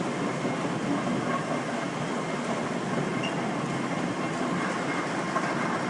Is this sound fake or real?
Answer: real